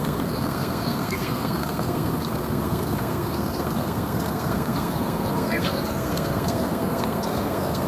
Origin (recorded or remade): remade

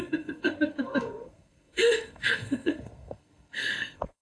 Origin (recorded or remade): remade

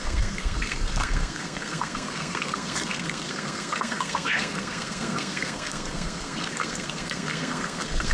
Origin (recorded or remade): remade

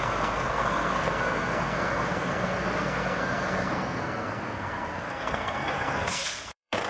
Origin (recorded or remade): remade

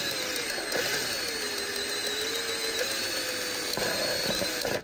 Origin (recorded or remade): recorded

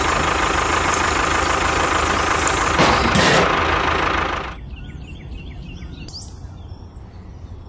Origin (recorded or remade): recorded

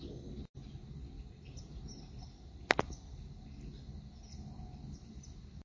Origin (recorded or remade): recorded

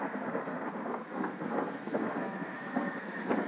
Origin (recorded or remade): remade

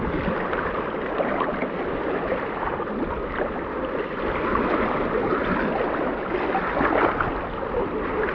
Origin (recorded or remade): recorded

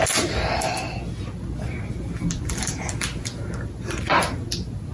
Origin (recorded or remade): recorded